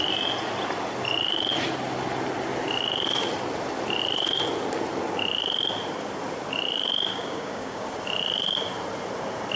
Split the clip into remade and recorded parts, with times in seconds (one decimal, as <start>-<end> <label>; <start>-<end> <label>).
0.0-7.1 recorded; 7.1-7.8 remade; 7.8-9.6 recorded